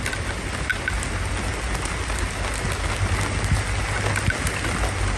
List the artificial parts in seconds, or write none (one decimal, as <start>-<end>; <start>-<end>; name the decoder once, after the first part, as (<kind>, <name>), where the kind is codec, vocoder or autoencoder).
none